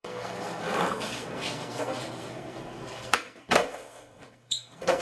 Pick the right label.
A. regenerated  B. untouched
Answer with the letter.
A